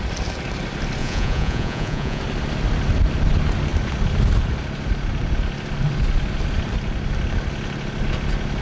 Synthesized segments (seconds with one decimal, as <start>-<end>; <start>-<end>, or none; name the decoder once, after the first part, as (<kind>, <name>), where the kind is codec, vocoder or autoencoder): 1.0-2.2 (vocoder, Vocos)